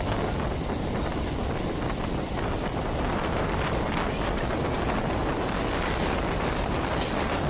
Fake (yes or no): no